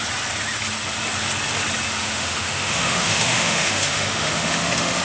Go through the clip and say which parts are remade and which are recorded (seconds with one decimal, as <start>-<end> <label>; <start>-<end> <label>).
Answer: 0.0-2.0 recorded; 2.0-5.0 remade

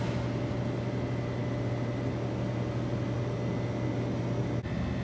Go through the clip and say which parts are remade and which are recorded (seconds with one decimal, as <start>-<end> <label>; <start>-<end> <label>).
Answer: 0.0-5.0 recorded